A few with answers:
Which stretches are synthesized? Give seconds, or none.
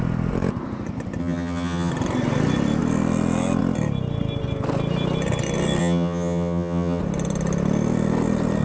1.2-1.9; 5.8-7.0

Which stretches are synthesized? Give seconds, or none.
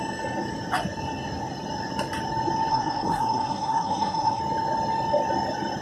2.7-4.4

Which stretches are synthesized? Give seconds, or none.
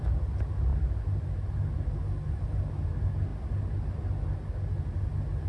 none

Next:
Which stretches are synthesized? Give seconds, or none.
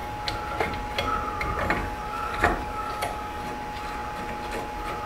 1.8-3.4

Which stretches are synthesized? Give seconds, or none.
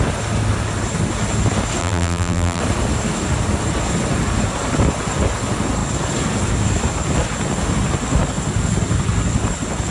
1.8-2.6